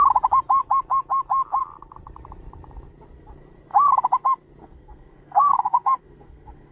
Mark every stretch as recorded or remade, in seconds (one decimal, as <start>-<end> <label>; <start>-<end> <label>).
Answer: 0.0-4.6 recorded; 4.6-6.7 remade